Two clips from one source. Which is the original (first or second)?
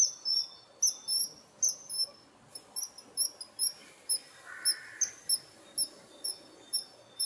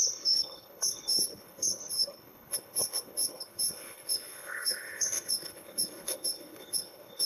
first